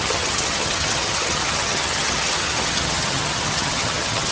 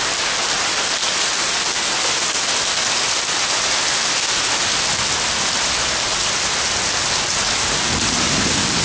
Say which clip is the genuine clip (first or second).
second